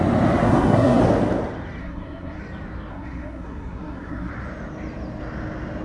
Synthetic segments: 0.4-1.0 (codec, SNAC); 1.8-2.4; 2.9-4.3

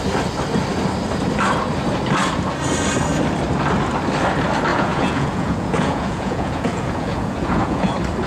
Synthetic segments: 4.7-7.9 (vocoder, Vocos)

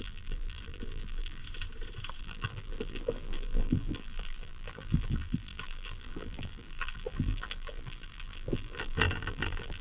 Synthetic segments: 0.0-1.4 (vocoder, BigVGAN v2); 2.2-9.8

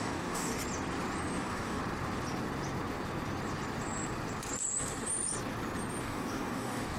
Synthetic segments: 0.0-0.5 (codec, DAC); 1.4-1.8; 6.0-7.0

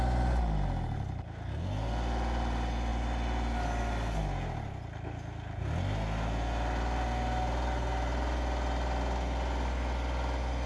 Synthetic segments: none